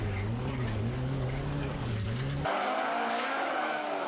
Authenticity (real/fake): fake